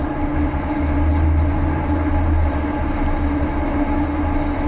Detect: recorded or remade recorded